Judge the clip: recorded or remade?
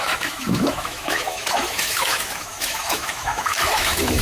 remade